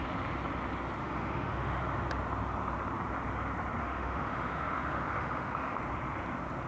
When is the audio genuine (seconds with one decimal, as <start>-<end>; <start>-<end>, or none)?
0.0-1.0; 1.8-3.8; 5.8-6.7